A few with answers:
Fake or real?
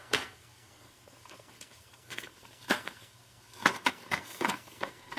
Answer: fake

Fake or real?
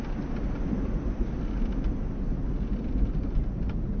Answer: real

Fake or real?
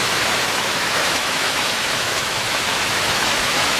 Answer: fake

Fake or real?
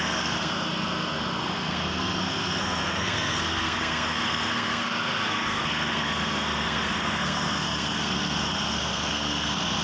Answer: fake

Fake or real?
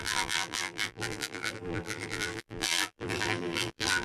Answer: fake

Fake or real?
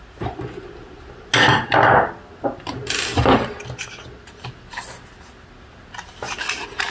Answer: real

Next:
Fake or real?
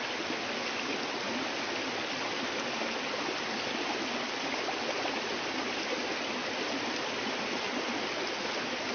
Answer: real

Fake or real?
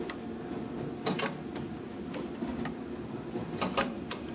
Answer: real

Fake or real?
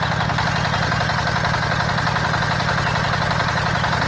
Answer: real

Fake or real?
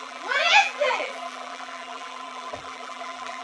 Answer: fake